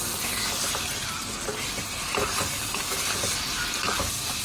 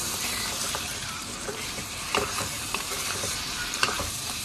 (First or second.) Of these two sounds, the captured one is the first